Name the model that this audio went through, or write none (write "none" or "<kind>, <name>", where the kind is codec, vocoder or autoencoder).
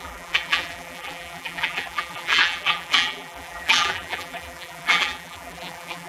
vocoder, BigVGAN v2